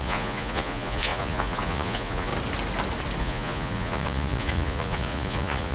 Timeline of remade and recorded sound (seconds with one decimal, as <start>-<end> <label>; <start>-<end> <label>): 0.0-2.3 remade; 2.3-3.2 recorded; 3.2-5.7 remade